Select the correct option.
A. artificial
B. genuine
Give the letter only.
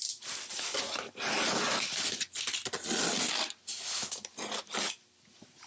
B